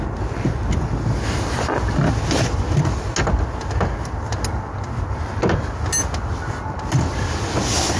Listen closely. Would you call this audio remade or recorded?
recorded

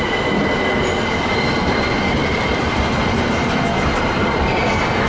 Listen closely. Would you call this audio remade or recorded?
recorded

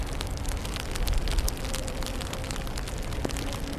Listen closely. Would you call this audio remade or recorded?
recorded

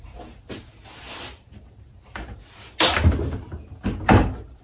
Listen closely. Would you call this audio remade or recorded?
recorded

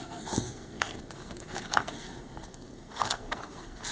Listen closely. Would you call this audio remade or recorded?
remade